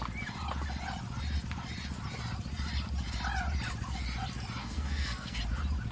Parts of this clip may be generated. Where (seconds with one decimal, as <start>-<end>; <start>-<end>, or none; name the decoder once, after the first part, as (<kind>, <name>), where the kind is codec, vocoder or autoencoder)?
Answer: 4.6-5.4 (codec, SNAC)